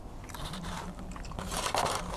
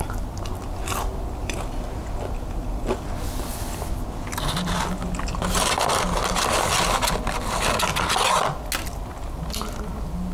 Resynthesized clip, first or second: first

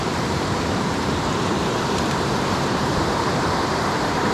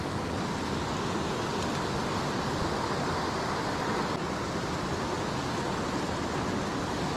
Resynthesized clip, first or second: first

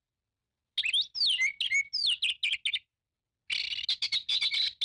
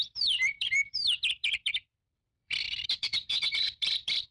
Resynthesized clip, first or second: second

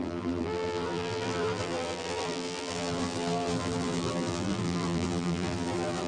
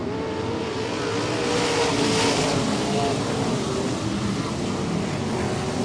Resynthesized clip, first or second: first